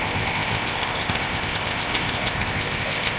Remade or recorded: remade